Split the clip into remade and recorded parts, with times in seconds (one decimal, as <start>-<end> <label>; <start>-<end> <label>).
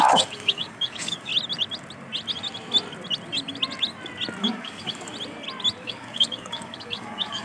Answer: 0.0-1.3 remade; 1.3-4.4 recorded; 4.4-5.1 remade; 5.1-5.8 recorded; 5.8-7.4 remade